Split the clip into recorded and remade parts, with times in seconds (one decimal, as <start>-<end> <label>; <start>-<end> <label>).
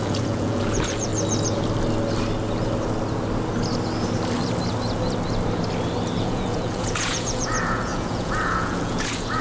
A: 0.0-1.1 remade; 1.1-6.2 recorded; 6.2-9.4 remade